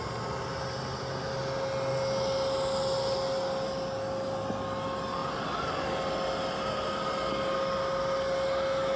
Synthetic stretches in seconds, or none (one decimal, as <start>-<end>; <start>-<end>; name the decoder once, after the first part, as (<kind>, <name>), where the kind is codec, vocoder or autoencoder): none

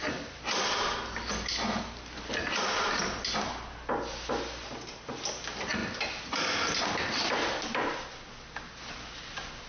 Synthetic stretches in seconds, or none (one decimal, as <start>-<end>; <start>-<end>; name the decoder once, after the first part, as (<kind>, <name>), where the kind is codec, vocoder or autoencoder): none

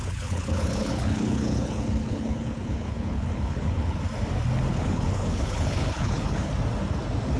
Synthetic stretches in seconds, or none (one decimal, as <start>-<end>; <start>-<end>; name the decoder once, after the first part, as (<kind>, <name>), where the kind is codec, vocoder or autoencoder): 0.0-4.0 (codec, HILCodec); 4.7-6.5

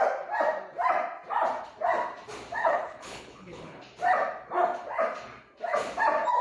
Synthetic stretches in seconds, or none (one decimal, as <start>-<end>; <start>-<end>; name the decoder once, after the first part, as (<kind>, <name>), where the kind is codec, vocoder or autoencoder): 2.6-3.8 (codec, HILCodec)

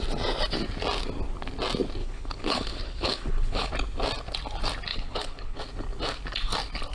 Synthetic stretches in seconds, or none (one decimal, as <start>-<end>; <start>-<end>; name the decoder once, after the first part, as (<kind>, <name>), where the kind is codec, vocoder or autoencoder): 2.0-3.7 (codec, HILCodec); 4.9-5.6

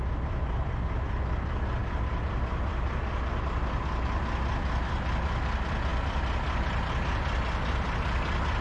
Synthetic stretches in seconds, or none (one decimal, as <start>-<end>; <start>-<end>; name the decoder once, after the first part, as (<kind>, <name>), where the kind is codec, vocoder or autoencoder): none

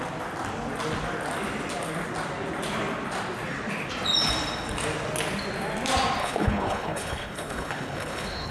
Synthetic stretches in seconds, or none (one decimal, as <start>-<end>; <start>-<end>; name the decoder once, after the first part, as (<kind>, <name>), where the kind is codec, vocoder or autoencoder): 6.2-8.5 (codec, HILCodec)